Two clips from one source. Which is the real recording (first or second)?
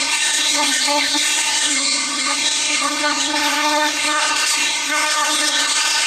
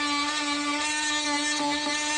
second